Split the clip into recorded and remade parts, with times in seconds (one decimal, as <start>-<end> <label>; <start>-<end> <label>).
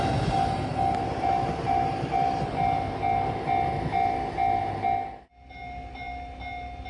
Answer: 0.0-6.9 recorded